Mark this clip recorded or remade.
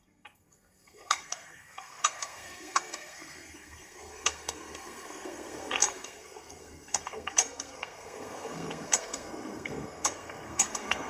remade